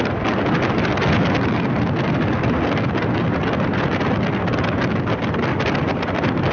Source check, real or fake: real